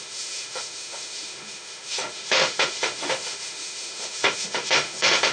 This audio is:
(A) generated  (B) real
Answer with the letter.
A